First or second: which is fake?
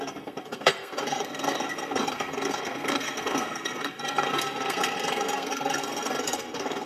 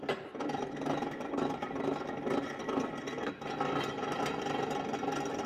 first